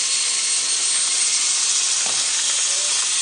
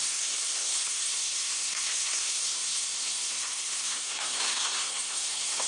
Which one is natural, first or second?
first